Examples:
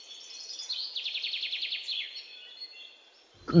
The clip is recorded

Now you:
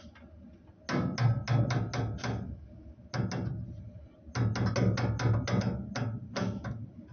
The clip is recorded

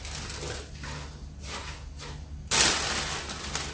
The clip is recorded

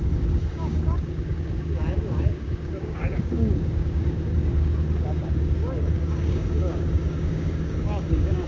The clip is remade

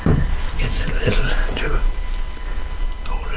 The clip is recorded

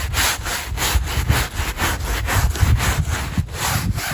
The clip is recorded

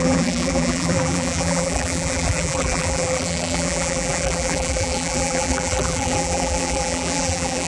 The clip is remade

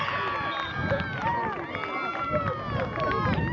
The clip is recorded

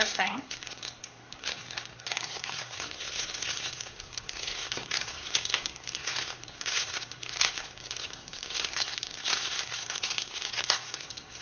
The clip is remade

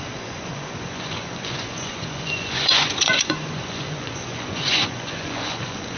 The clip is remade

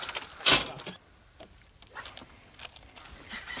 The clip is recorded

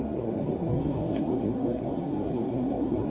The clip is remade